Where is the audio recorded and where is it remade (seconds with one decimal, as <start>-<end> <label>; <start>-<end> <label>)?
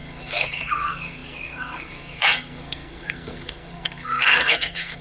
0.0-5.0 remade